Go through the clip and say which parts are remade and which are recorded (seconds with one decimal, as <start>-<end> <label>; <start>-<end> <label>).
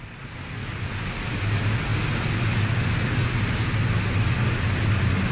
0.0-5.3 recorded